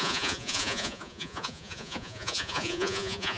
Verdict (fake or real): fake